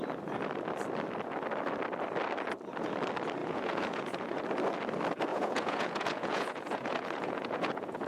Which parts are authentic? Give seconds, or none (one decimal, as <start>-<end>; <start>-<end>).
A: 0.0-3.4; 4.4-5.3